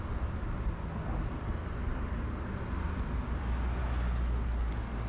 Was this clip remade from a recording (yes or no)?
no